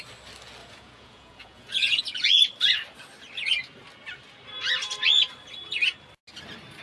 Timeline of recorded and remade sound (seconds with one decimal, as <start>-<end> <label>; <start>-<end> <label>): 0.0-0.6 recorded; 0.6-2.0 remade; 2.0-6.8 recorded